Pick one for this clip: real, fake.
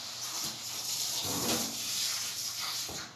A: fake